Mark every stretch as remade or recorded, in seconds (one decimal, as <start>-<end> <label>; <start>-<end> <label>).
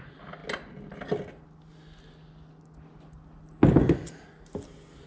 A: 0.0-5.1 recorded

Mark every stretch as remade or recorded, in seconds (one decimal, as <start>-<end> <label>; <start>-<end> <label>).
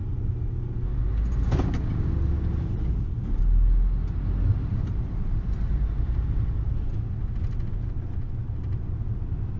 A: 0.0-0.6 remade; 0.6-4.5 recorded; 4.5-5.4 remade; 5.4-9.6 recorded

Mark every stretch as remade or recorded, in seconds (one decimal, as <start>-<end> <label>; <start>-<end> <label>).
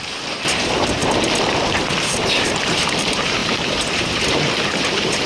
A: 0.0-1.0 remade; 1.0-1.7 recorded; 1.7-5.3 remade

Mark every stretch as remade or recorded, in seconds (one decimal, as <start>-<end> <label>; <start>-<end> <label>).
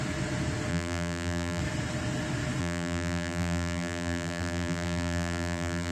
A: 0.0-0.7 recorded; 0.7-1.6 remade; 1.6-2.6 recorded; 2.6-5.9 remade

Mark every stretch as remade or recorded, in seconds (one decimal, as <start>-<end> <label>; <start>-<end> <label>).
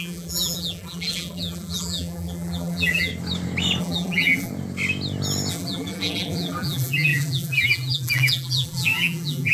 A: 0.0-3.1 remade; 3.1-3.8 recorded; 3.8-4.5 remade; 4.5-5.5 recorded; 5.5-9.5 remade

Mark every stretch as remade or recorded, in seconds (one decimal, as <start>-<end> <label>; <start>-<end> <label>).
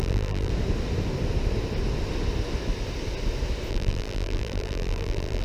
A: 0.0-0.5 remade; 0.5-3.7 recorded; 3.7-5.4 remade